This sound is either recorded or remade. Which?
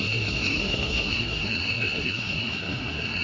remade